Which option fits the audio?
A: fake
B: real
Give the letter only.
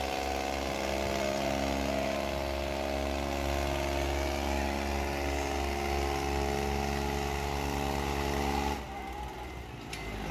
B